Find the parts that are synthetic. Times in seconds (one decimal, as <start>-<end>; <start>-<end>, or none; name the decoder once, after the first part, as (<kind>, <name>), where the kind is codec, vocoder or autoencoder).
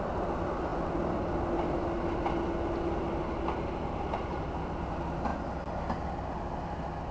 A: none